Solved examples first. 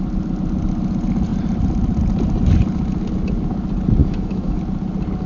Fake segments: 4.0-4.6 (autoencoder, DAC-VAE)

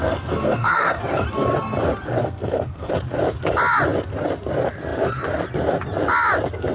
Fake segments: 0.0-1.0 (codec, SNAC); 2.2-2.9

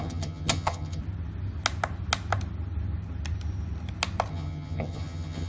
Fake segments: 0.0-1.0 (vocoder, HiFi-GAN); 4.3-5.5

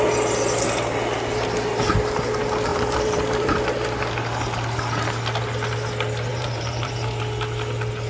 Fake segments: 2.7-4.0 (vocoder, BigVGAN v2); 6.3-7.2